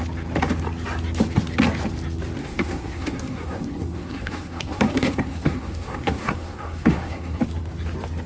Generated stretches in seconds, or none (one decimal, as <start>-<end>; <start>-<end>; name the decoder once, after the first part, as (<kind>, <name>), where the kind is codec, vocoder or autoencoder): 2.4-7.4 (codec, SNAC)